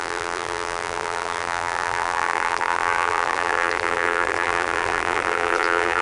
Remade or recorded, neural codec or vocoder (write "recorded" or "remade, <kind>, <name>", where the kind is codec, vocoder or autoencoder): remade, vocoder, BigVGAN v2